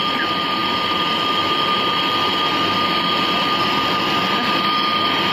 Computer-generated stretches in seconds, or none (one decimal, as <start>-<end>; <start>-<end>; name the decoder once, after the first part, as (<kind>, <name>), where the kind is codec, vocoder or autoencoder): none

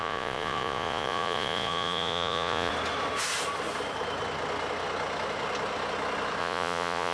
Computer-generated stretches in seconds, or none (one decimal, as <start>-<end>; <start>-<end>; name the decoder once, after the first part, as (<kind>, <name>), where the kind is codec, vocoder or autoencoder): 0.0-2.7 (vocoder, Vocos); 6.4-7.1

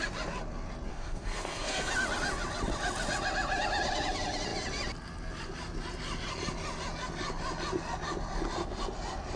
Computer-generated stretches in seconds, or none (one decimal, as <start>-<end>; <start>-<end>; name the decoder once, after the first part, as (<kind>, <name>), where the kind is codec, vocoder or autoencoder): 0.9-1.9 (codec, SNAC)

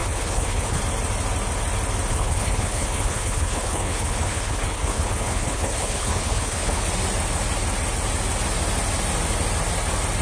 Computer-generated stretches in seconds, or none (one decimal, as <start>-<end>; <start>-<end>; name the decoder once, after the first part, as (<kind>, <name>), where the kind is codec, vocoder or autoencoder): 0.0-0.8 (codec, HILCodec); 2.1-6.8